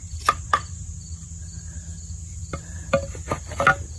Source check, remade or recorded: recorded